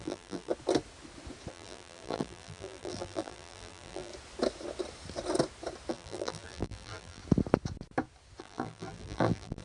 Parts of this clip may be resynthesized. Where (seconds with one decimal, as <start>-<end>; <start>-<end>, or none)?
0.0-0.5; 1.5-4.1; 5.9-7.2; 8.4-9.6